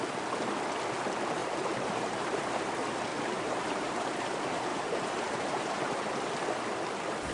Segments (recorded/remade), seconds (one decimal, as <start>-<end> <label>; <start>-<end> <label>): 0.0-1.4 recorded; 1.4-2.7 remade; 2.7-3.1 recorded; 3.1-3.9 remade; 3.9-4.7 recorded; 4.7-5.9 remade; 5.9-7.3 recorded